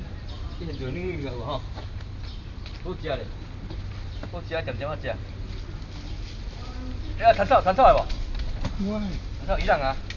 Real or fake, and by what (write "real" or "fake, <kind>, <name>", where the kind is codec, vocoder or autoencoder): real